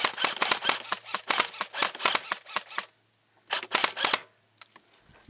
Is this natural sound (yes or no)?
yes